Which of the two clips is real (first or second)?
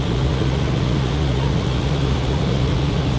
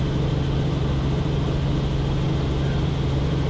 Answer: second